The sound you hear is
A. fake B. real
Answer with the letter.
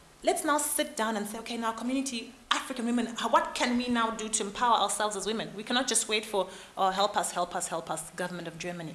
B